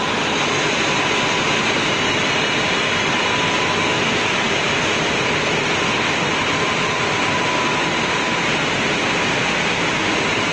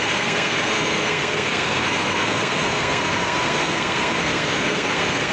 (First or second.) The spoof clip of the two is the second